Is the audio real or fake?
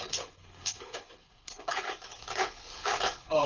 fake